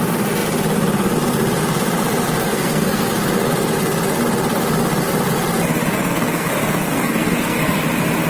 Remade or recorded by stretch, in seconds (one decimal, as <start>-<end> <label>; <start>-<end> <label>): 0.0-2.4 recorded; 2.4-3.1 remade; 3.1-5.9 recorded; 5.9-7.8 remade; 7.8-8.3 recorded